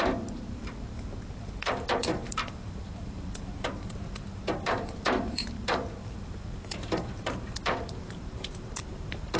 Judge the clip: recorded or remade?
remade